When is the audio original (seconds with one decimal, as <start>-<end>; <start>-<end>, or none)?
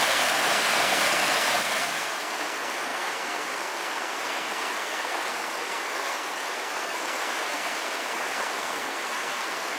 none